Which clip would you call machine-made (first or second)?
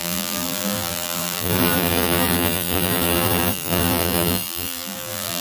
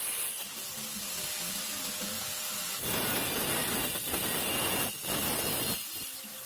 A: first